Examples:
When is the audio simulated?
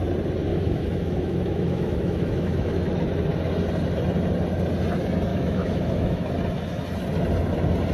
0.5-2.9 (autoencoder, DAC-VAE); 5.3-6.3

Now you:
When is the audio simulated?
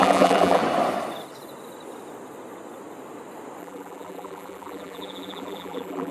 0.0-0.6 (vocoder, BigVGAN v2); 3.6-6.1